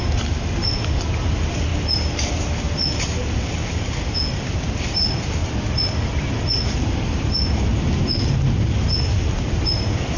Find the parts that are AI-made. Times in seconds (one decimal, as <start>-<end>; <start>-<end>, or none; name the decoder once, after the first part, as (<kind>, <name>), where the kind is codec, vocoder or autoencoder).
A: none